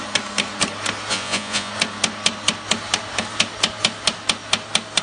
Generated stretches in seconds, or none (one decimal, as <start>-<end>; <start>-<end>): 1.1-1.7